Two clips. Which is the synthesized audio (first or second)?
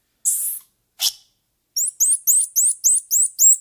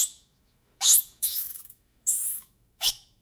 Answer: second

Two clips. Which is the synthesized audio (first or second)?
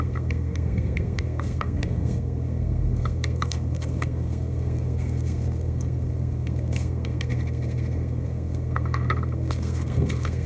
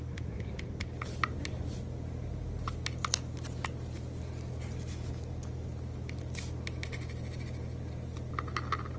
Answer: first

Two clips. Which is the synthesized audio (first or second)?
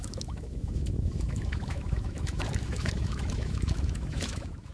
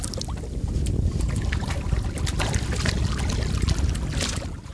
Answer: first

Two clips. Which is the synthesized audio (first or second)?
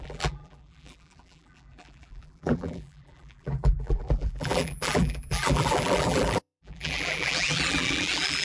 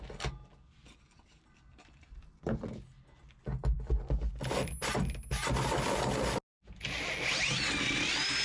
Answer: first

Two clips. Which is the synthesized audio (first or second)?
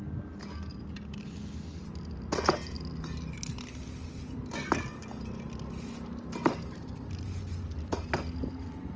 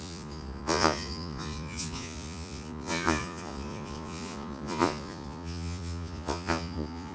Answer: second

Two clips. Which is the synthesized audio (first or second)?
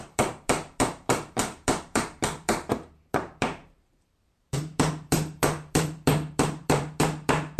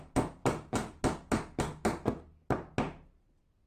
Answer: first